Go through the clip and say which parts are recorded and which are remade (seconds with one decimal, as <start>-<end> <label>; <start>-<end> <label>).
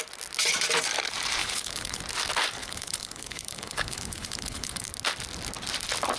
0.0-1.4 recorded; 1.4-2.0 remade; 2.0-2.6 recorded; 2.6-4.9 remade; 4.9-6.2 recorded